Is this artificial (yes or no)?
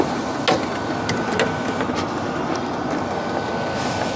no